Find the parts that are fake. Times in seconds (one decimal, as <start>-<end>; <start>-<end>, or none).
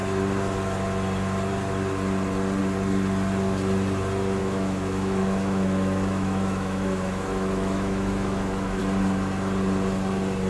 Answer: 4.4-8.8